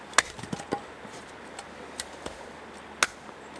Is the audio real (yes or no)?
yes